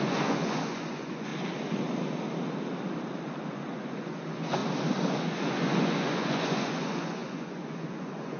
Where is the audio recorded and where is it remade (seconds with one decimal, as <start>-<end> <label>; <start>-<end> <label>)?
0.0-1.3 remade; 1.3-3.5 recorded; 3.5-4.6 remade; 4.6-5.1 recorded; 5.1-8.4 remade